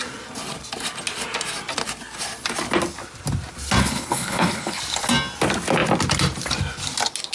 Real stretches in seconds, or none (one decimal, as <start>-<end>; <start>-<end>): 0.0-3.8; 4.8-7.3